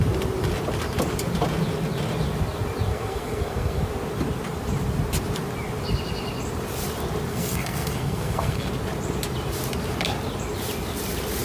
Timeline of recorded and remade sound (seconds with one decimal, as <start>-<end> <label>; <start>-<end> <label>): 0.0-2.9 recorded; 2.9-3.8 remade; 3.8-7.3 recorded; 7.3-8.7 remade; 8.7-11.4 recorded